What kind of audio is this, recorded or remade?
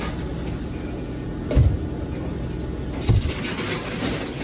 recorded